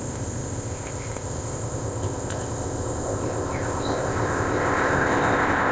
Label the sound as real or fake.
fake